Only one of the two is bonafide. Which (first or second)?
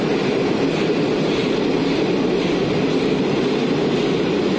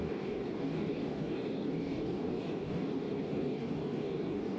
first